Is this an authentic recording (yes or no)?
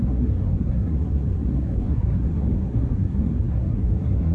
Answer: no